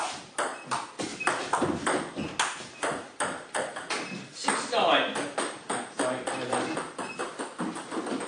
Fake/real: real